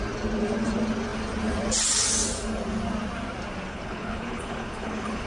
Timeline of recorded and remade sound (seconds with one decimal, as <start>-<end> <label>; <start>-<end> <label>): 0.0-3.7 recorded; 3.7-5.3 remade